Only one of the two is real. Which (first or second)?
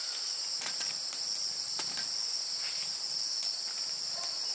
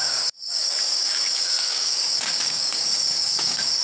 first